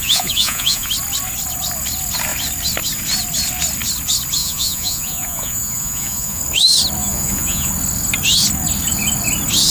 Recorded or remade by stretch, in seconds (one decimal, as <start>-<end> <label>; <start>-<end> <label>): 0.0-0.9 remade; 0.9-4.4 recorded; 4.4-6.4 remade; 6.4-7.0 recorded; 7.0-7.7 remade; 7.7-9.7 recorded